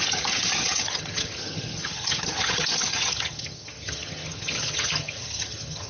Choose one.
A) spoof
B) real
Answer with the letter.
A